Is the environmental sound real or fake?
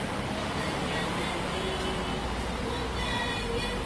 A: real